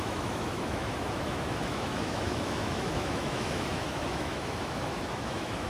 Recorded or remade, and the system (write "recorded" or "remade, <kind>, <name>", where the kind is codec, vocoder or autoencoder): remade, autoencoder, DAC-VAE